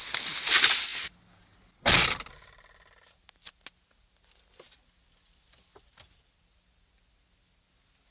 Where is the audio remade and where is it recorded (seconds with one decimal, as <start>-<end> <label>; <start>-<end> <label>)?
0.0-8.1 recorded